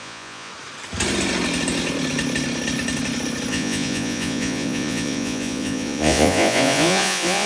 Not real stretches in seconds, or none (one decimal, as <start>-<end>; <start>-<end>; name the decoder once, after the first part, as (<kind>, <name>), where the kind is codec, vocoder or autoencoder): 0.0-0.5 (vocoder, Vocos); 3.5-7.5